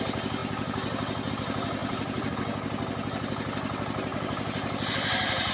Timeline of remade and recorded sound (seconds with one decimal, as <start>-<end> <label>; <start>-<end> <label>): 0.0-1.8 recorded; 1.8-2.3 remade; 2.3-5.5 recorded